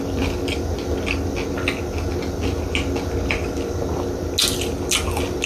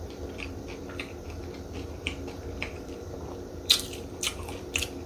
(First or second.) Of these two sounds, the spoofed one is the second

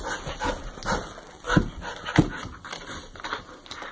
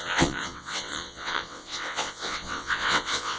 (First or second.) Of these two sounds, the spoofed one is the second